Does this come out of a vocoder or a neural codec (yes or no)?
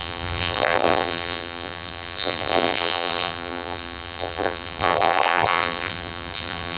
yes